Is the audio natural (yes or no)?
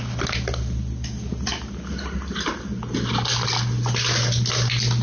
yes